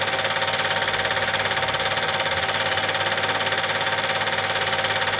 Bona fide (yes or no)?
yes